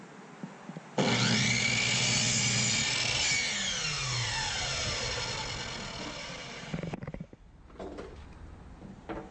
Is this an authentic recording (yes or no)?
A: yes